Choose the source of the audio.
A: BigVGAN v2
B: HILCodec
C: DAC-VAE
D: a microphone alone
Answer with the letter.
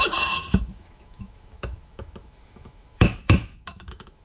C